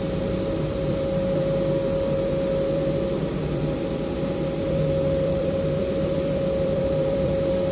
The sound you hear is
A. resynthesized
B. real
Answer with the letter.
A